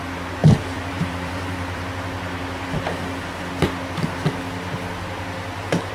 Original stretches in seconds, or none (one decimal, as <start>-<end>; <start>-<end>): 0.0-0.4; 1.9-5.9